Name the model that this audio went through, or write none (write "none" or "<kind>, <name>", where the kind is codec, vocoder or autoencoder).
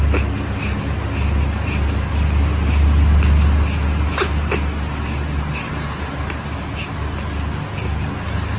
none